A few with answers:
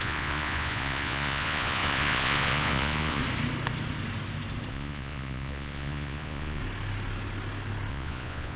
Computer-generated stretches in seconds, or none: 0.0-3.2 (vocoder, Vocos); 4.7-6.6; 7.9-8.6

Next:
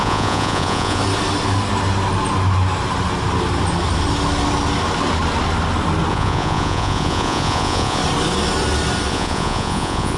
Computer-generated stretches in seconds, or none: 0.0-1.0 (vocoder, Vocos); 6.1-8.0; 9.1-10.2